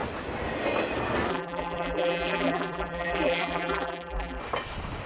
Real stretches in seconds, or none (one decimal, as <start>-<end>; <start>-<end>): 0.0-1.3; 4.4-5.1